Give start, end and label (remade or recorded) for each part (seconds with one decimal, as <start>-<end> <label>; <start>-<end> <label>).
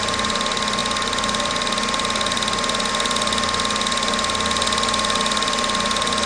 0.0-6.3 recorded